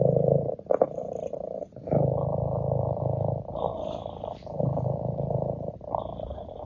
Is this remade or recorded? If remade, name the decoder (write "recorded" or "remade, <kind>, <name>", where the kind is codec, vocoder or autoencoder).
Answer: remade, vocoder, BigVGAN v2